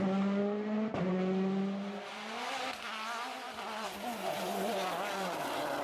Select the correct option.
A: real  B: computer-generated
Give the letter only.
A